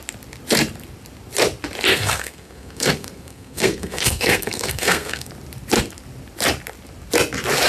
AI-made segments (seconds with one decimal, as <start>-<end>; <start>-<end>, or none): 1.9-5.3